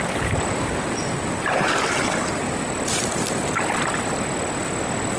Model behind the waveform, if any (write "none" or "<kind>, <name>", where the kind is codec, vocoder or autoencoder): none